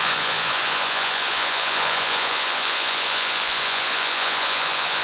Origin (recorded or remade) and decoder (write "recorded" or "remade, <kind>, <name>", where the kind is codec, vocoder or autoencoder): remade, vocoder, Vocos